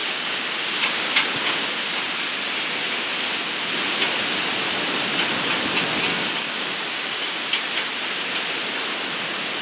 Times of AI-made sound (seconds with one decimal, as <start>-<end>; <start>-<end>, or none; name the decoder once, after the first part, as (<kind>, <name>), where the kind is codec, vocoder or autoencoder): 0.0-1.3 (codec, DAC); 6.1-7.7